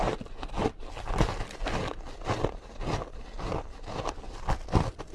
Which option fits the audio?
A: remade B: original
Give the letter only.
B